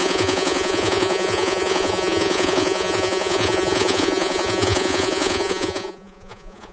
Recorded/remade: remade